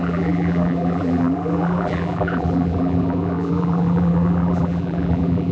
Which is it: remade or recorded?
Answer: remade